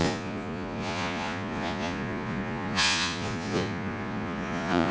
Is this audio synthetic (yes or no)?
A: yes